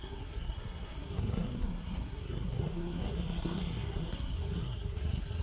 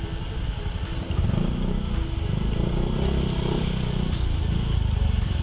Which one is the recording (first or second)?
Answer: second